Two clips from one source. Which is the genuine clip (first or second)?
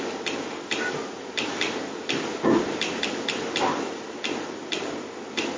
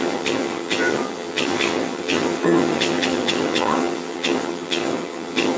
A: first